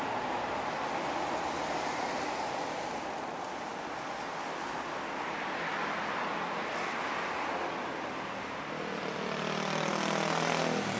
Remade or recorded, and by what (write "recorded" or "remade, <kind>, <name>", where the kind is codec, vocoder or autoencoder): recorded